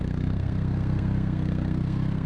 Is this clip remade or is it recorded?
remade